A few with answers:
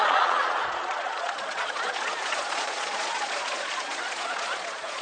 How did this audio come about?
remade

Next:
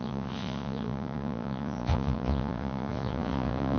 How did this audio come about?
remade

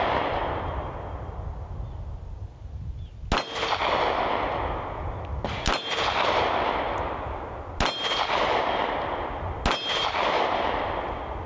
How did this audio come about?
recorded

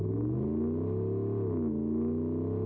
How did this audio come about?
recorded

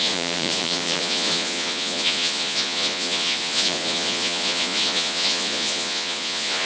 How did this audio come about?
remade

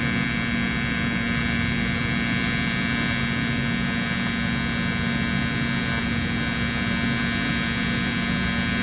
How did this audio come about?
recorded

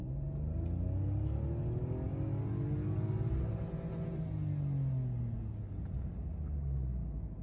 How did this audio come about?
recorded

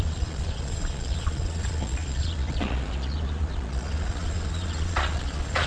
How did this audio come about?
remade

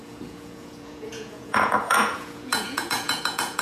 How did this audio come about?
remade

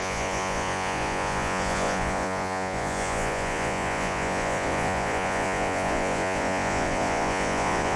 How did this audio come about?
remade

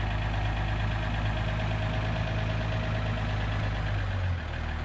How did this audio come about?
recorded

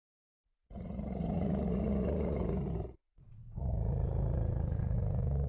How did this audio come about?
remade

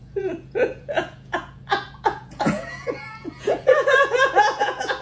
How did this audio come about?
remade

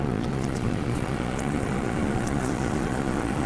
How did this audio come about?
remade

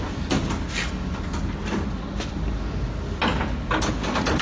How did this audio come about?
recorded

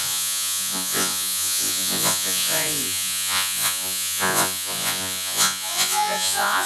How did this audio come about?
remade